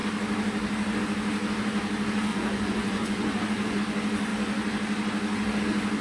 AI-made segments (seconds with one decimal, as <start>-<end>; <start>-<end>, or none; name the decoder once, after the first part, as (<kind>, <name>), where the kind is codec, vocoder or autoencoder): 2.3-3.8 (vocoder, Vocos)